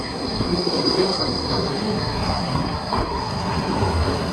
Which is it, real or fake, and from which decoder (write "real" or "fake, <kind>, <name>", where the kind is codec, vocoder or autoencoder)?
fake, codec, SNAC